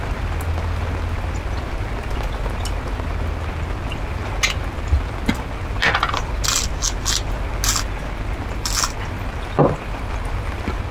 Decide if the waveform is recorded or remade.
recorded